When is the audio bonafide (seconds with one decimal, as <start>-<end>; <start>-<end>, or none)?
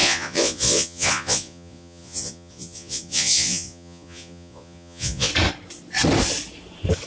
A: 5.3-7.1